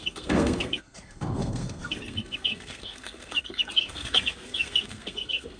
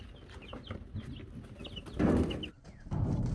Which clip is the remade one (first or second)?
first